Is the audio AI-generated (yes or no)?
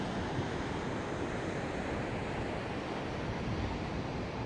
no